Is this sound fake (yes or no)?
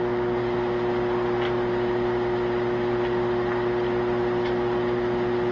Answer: no